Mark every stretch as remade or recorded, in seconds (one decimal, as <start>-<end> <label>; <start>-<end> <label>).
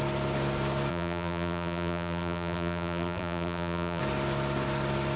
0.0-0.9 recorded; 0.9-4.0 remade; 4.0-5.2 recorded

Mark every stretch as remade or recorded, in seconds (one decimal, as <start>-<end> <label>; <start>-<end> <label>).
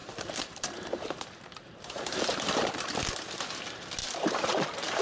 0.0-3.0 remade; 3.0-4.0 recorded; 4.0-5.0 remade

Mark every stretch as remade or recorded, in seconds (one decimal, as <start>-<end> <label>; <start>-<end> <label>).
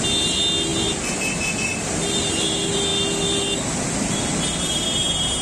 0.0-5.4 recorded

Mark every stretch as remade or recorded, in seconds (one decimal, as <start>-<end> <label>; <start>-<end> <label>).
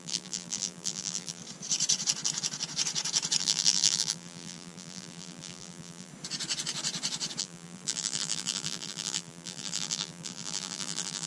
0.0-1.4 remade; 1.4-3.4 recorded; 3.4-6.1 remade; 6.1-7.4 recorded; 7.4-11.3 remade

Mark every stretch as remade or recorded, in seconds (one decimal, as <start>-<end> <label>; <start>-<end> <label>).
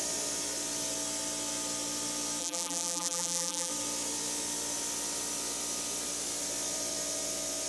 0.0-2.4 recorded; 2.4-3.7 remade; 3.7-7.7 recorded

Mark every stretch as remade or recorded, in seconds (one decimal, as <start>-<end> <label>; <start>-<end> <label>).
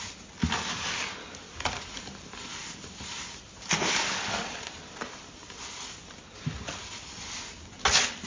0.0-2.5 recorded; 2.5-5.8 remade; 5.8-8.3 recorded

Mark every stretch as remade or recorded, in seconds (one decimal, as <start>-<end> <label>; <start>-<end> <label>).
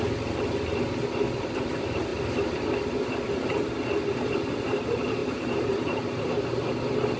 0.0-5.2 recorded; 5.2-6.4 remade; 6.4-7.2 recorded